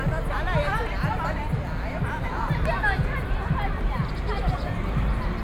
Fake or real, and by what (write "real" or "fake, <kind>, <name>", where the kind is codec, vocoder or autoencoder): real